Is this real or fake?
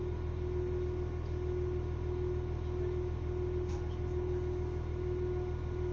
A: real